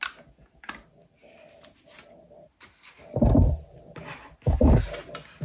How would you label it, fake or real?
real